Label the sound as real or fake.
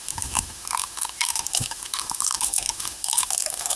fake